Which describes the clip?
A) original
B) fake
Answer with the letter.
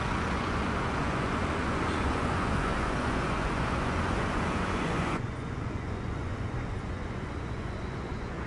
B